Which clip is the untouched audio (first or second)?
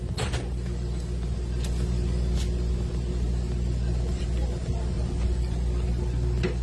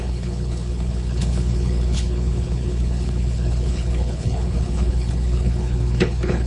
first